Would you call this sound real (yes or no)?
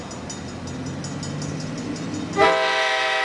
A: yes